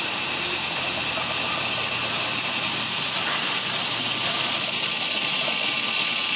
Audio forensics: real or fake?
real